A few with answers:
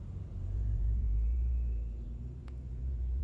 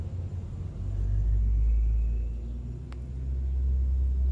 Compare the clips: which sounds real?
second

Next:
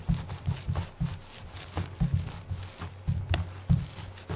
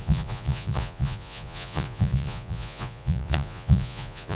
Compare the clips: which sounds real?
first